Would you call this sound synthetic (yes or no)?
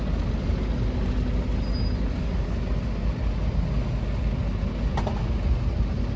no